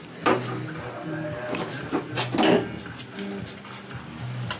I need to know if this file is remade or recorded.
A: recorded